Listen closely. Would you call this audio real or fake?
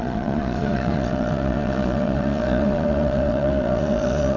fake